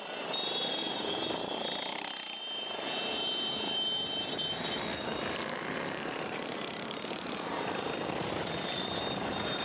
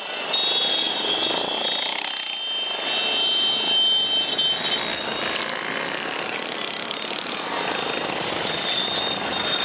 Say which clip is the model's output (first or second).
first